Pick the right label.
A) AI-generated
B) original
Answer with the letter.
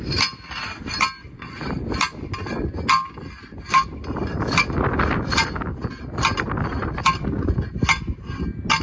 B